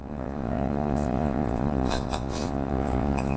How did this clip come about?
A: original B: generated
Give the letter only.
B